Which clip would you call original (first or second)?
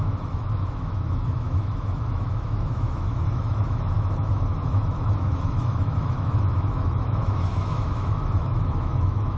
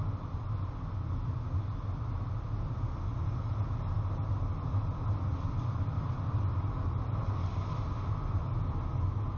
second